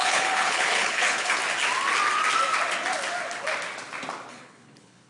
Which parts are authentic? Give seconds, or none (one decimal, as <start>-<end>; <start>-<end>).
1.4-4.3